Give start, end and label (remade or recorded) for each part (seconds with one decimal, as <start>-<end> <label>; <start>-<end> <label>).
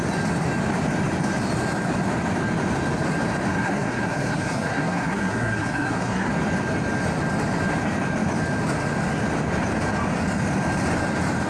0.0-3.5 recorded; 3.5-6.3 remade; 6.3-11.5 recorded